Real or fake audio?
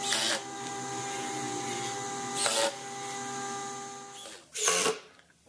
real